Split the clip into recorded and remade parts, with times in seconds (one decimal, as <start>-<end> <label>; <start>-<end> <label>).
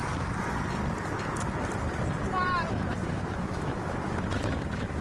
0.0-2.7 recorded; 2.7-5.0 remade